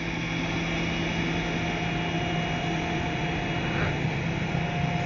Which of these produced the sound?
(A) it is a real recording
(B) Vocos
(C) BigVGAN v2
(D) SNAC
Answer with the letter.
A